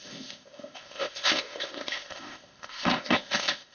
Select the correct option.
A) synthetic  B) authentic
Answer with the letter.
A